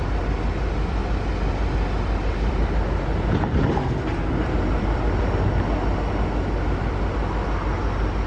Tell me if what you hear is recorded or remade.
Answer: recorded